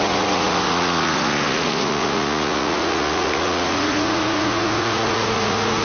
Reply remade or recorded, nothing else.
remade